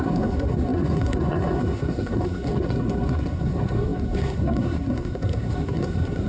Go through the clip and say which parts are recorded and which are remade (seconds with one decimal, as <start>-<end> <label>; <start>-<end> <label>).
0.0-6.3 remade